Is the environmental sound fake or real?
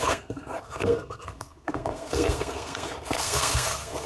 fake